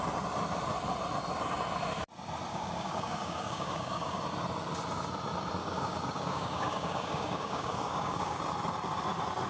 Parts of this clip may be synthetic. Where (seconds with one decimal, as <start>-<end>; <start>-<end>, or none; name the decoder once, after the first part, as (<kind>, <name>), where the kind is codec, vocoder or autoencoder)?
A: 2.5-4.2 (codec, DAC); 5.6-8.4